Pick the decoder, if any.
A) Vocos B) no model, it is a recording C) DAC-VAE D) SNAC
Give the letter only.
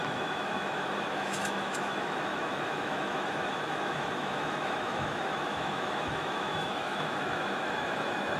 C